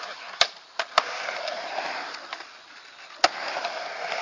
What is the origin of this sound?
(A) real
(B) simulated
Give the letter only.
A